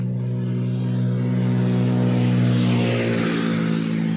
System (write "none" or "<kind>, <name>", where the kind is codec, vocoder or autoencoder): none